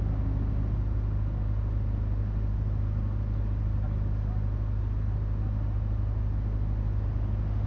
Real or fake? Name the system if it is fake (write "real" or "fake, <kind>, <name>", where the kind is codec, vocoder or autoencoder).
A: real